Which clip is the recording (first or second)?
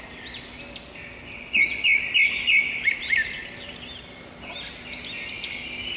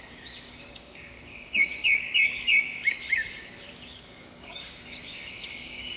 first